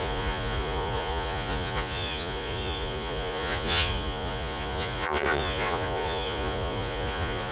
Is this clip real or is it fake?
fake